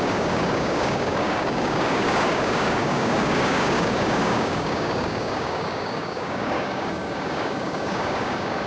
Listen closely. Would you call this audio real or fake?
fake